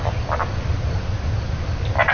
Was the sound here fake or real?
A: real